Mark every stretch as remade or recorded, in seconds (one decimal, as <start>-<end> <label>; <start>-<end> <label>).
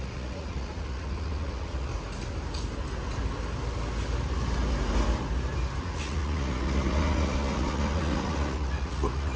0.0-1.9 remade; 1.9-5.8 recorded; 5.8-9.4 remade